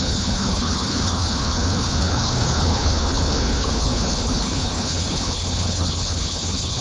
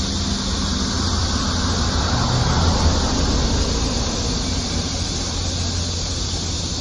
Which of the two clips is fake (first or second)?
first